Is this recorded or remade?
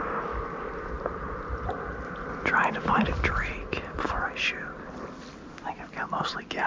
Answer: recorded